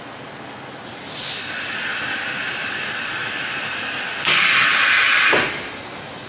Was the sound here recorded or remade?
recorded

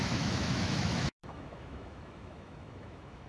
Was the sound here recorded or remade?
remade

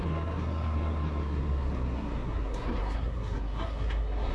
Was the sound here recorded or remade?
remade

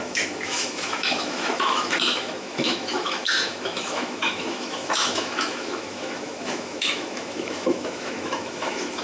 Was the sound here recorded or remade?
remade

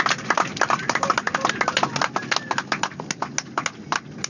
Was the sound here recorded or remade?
recorded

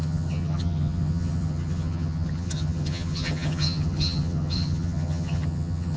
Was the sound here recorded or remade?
remade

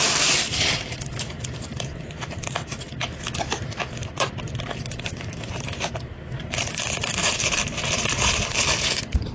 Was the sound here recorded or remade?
remade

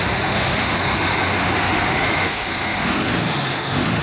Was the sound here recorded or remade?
remade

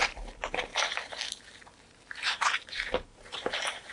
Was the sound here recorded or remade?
remade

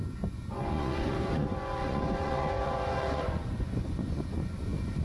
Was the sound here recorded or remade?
remade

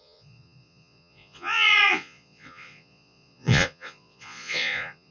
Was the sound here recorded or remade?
remade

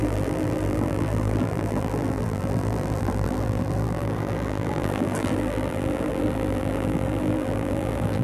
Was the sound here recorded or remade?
remade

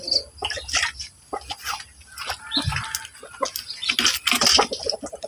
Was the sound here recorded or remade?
recorded